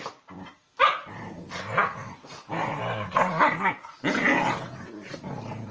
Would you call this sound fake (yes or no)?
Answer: no